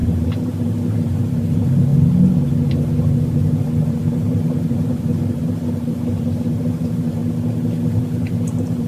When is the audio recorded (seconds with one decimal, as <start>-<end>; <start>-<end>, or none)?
1.9-2.7; 7.2-7.9